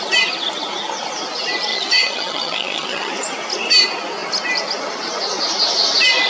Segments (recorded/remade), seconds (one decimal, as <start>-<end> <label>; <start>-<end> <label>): 0.0-1.7 recorded; 1.7-3.1 remade; 3.1-6.3 recorded